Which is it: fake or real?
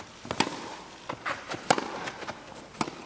real